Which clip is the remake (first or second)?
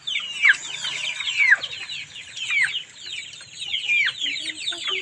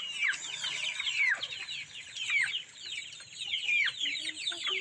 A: second